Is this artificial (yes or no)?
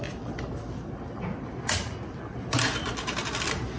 no